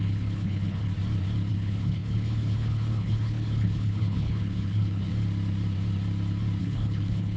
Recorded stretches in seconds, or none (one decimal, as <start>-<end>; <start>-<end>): 0.9-1.5; 5.1-6.6